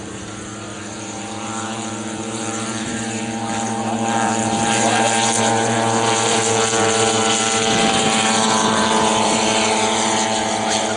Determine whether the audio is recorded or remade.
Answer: remade